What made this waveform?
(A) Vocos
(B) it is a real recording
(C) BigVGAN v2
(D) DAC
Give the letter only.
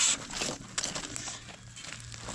B